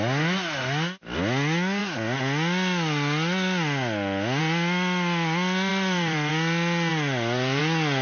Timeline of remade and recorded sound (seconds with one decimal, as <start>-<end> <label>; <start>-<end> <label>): 0.0-5.7 recorded; 5.7-6.3 remade; 6.3-6.9 recorded; 6.9-7.6 remade; 7.6-8.0 recorded